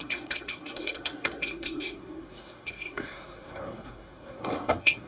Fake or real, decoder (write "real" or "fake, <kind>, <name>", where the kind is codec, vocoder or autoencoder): fake, codec, SNAC